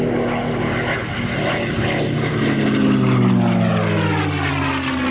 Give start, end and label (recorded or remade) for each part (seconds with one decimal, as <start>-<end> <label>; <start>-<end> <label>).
0.0-1.0 recorded; 1.0-2.6 remade; 2.6-5.1 recorded